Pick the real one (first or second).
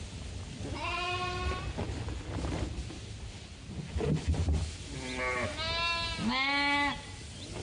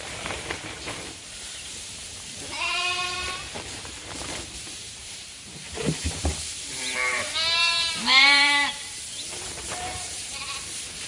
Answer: first